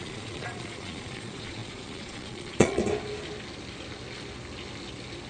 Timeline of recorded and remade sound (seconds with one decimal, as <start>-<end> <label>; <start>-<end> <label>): 0.0-2.8 remade; 2.8-5.3 recorded